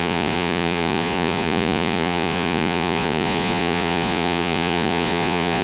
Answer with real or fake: fake